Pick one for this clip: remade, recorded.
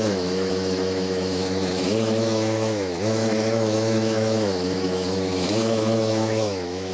remade